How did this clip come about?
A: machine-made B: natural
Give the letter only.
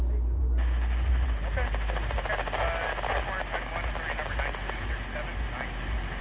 B